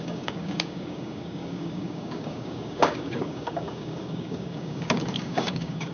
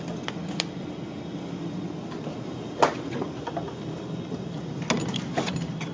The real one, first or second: second